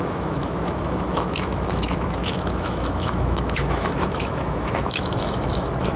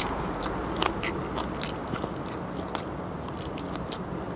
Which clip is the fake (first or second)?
first